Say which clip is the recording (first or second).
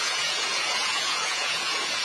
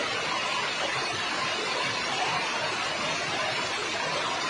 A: second